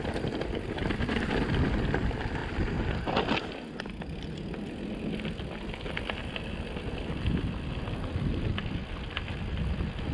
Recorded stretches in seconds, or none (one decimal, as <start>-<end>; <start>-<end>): 0.0-10.1